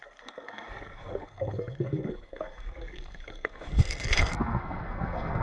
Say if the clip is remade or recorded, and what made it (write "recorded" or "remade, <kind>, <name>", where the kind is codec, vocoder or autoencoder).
remade, codec, SNAC